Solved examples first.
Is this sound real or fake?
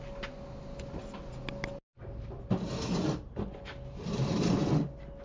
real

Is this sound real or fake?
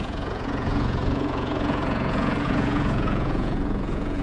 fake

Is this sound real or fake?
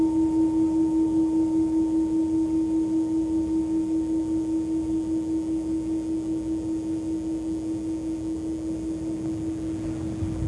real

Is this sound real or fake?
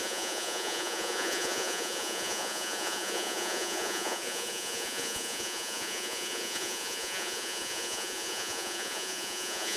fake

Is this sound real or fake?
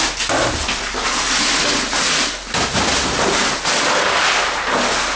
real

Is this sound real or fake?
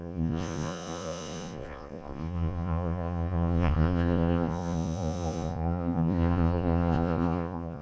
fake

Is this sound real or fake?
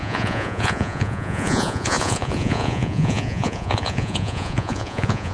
fake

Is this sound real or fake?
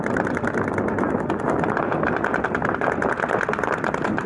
real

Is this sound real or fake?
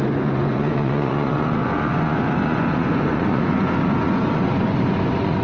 fake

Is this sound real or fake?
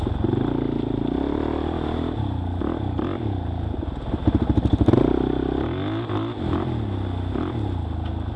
real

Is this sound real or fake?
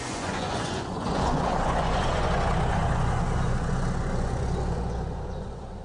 fake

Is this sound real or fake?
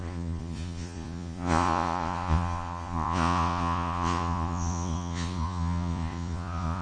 fake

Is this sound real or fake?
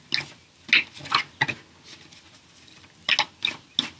real